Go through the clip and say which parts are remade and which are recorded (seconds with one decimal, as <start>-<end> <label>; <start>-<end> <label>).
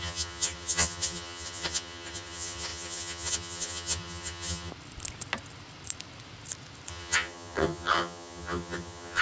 0.0-4.7 remade; 4.7-6.9 recorded; 6.9-9.2 remade